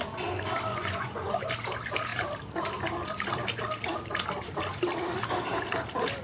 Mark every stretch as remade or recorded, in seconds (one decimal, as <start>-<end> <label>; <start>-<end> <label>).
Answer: 0.0-0.7 recorded; 0.7-1.4 remade; 1.4-6.2 recorded